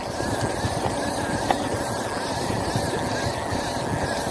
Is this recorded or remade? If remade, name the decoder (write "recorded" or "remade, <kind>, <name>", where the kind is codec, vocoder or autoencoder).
recorded